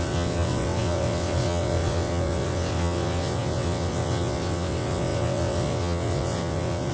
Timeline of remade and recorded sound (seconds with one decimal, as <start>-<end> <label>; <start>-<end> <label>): 0.0-6.9 remade